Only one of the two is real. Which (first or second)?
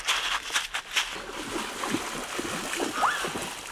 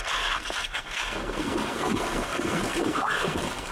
first